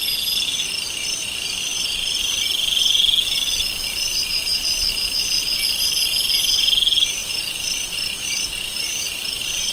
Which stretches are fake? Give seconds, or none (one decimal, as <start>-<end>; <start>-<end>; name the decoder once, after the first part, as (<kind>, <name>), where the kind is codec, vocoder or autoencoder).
1.7-2.4 (vocoder, BigVGAN v2); 7.2-9.7